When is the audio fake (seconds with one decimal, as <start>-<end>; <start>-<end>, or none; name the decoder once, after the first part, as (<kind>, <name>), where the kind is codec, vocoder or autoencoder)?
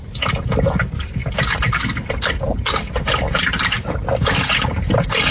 none